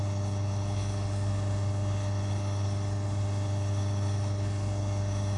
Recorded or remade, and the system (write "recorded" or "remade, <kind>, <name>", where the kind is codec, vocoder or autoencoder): remade, codec, HILCodec